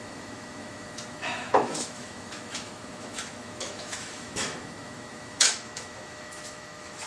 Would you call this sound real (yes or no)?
no